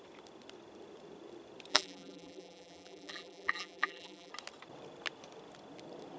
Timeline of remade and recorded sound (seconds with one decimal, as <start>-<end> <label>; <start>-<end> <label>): 0.0-1.7 recorded; 1.7-4.3 remade; 4.3-6.2 recorded